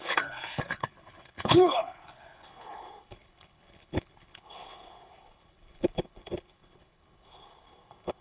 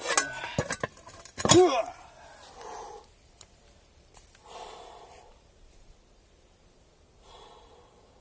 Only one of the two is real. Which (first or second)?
second